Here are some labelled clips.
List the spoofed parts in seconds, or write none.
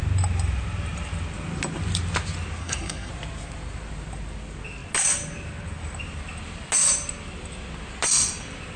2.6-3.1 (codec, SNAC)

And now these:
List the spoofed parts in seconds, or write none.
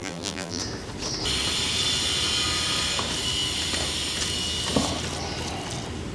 0.0-0.6 (vocoder, BigVGAN v2)